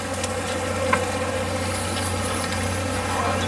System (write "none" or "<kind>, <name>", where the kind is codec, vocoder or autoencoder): none